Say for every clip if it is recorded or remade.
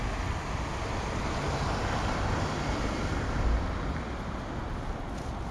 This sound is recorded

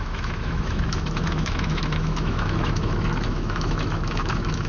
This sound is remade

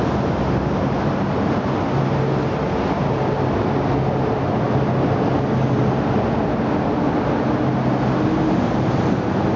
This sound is recorded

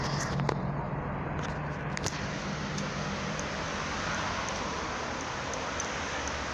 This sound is recorded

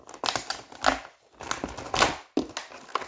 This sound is recorded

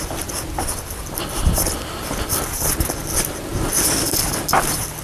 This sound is recorded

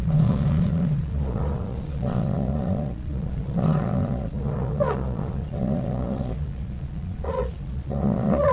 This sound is remade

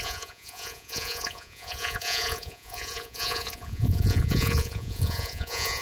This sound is remade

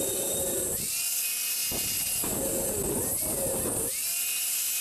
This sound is recorded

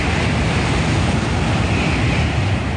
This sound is recorded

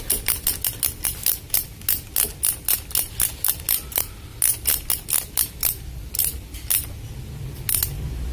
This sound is recorded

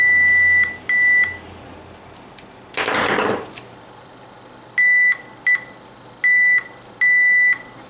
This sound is recorded